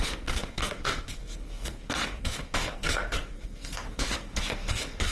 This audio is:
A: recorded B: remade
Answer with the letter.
B